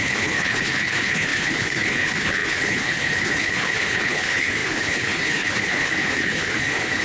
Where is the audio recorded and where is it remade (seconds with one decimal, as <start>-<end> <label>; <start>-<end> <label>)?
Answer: 0.0-7.0 remade